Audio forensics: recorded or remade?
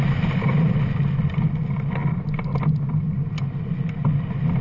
recorded